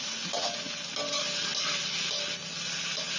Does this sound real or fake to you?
real